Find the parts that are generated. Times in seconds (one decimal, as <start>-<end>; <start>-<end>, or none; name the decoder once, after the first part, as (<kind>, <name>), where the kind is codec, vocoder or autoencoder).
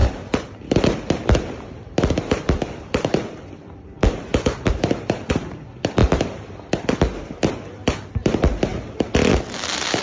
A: 1.0-4.3 (vocoder, BigVGAN v2); 5.3-6.0; 7.5-8.7; 9.3-10.0